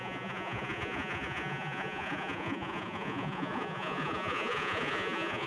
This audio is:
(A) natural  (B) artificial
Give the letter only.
B